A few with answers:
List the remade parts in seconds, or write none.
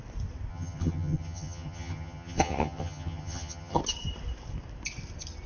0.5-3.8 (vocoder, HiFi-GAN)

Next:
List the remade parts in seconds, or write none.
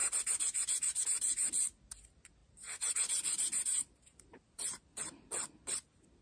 0.0-1.0 (vocoder, BigVGAN v2); 2.4-5.0